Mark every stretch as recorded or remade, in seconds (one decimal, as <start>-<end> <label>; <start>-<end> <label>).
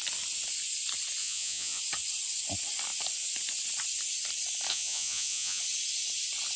0.0-1.2 recorded; 1.2-1.8 remade; 1.8-4.7 recorded; 4.7-5.6 remade; 5.6-6.6 recorded